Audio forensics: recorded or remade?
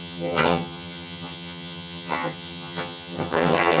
remade